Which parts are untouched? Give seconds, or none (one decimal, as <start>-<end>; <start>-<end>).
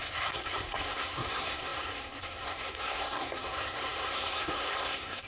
none